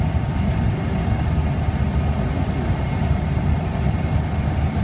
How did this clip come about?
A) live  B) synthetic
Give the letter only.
A